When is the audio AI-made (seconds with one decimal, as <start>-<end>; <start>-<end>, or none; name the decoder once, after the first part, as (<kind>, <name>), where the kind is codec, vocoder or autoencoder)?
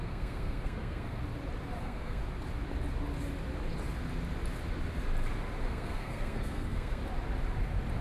0.0-1.2 (codec, SNAC); 1.8-2.2; 5.6-7.0